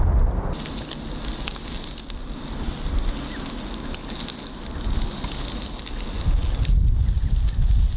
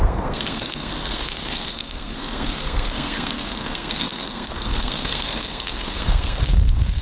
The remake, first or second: second